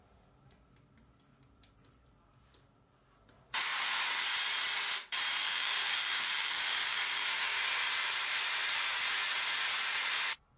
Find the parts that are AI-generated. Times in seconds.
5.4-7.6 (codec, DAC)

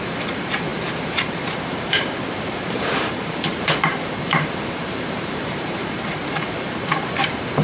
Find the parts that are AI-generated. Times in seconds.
0.0-7.6 (vocoder, BigVGAN v2)